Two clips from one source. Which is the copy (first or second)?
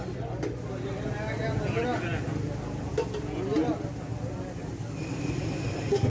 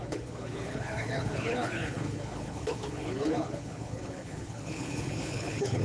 second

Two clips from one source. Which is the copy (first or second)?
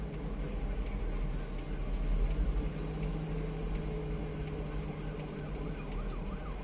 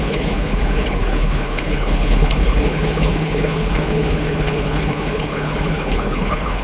second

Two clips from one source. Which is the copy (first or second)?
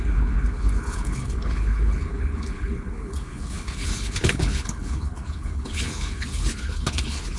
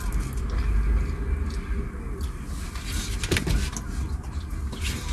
first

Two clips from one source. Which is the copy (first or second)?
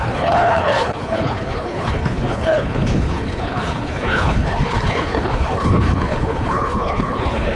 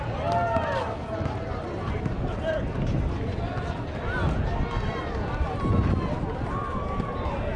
first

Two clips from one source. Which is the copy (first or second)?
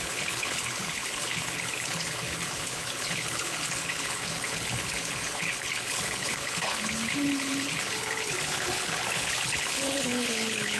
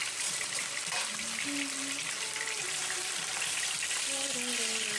first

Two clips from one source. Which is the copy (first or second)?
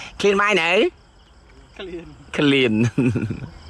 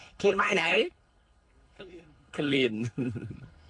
second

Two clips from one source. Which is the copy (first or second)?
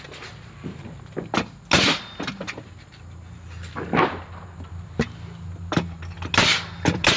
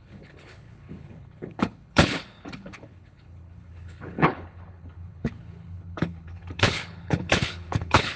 second